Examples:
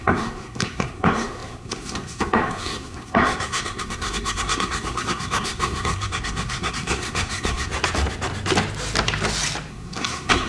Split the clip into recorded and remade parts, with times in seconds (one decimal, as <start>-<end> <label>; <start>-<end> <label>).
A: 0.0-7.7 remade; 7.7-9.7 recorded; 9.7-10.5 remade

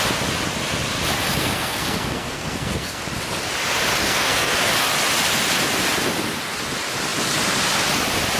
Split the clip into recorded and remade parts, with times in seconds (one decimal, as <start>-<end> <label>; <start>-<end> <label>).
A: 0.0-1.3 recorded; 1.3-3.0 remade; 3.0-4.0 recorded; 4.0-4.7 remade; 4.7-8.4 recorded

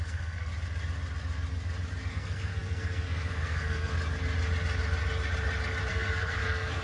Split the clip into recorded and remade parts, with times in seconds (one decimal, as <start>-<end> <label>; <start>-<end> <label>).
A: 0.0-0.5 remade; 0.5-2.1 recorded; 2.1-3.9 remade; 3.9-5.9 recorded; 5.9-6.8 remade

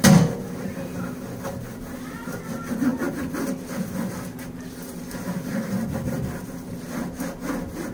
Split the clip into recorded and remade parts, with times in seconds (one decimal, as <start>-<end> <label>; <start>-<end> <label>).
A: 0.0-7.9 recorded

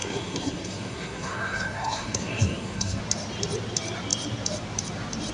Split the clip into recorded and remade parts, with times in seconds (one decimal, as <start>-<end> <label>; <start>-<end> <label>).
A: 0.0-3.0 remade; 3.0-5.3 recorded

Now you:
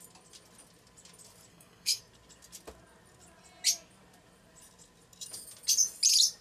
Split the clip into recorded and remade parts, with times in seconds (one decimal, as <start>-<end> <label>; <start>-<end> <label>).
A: 0.0-1.5 recorded; 1.5-2.0 remade; 2.0-6.4 recorded

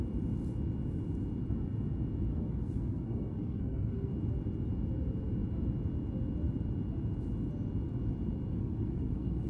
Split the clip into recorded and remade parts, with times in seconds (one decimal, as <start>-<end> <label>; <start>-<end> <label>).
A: 0.0-2.3 recorded; 2.3-4.1 remade; 4.1-8.5 recorded; 8.5-9.5 remade